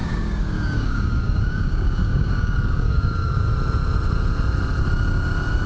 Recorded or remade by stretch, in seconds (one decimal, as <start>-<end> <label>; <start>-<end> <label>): 0.0-3.4 remade; 3.4-5.7 recorded